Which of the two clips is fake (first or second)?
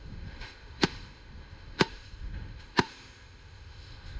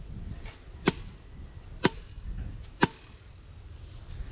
first